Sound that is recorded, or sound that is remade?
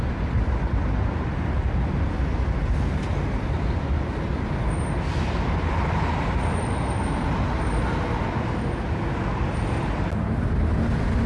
recorded